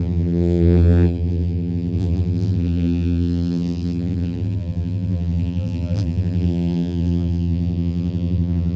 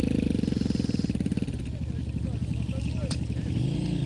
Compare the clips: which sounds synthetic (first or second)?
first